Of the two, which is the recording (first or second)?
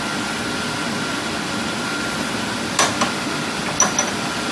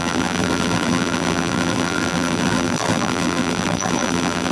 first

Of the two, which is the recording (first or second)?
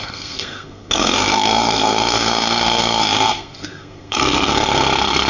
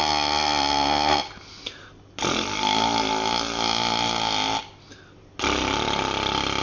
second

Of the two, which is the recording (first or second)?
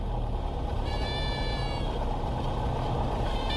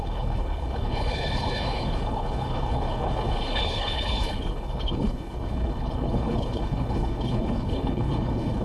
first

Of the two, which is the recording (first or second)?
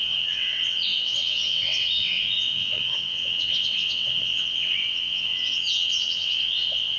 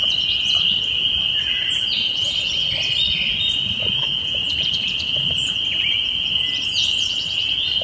second